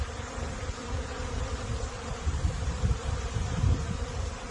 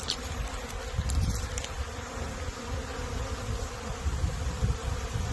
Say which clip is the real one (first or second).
second